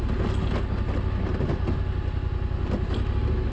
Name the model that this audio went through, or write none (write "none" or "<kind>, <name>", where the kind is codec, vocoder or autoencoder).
none